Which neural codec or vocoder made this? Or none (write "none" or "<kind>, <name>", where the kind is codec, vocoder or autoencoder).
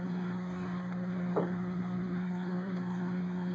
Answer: codec, SNAC